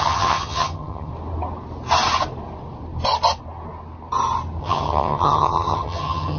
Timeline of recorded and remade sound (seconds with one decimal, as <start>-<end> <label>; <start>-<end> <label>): 0.0-1.1 remade; 1.1-4.6 recorded; 4.6-6.4 remade